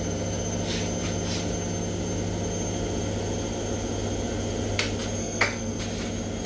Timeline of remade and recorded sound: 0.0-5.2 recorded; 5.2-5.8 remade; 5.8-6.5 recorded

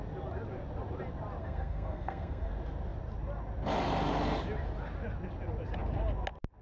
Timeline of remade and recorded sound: 0.0-1.4 recorded; 1.4-2.5 remade; 2.5-6.6 recorded

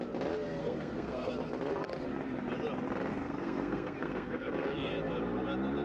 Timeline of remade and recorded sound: 0.0-0.6 recorded; 0.6-1.3 remade; 1.3-3.1 recorded; 3.1-4.9 remade; 4.9-5.8 recorded

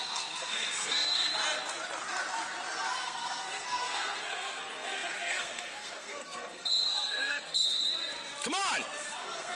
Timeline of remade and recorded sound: 0.0-1.3 remade; 1.3-3.0 recorded; 3.0-7.8 remade; 7.8-9.0 recorded; 9.0-9.6 remade

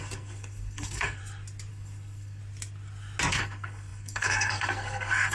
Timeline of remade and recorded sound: 0.0-1.2 remade; 1.2-1.7 recorded; 1.7-2.4 remade; 2.4-3.3 recorded; 3.3-5.3 remade

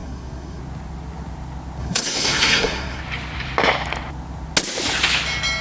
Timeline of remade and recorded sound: 0.0-0.6 remade; 0.6-1.8 recorded; 1.8-3.0 remade; 3.0-5.6 recorded

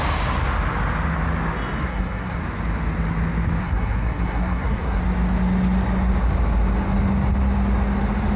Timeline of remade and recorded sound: 0.0-1.8 recorded; 1.8-2.4 remade; 2.4-3.6 recorded; 3.6-5.0 remade; 5.0-8.4 recorded